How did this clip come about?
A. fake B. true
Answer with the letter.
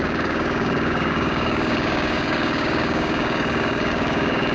A